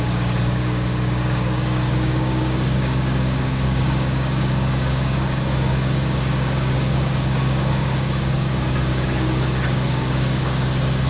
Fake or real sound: fake